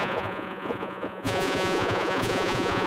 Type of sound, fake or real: fake